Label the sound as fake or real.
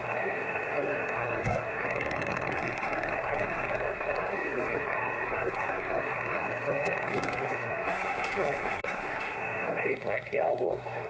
fake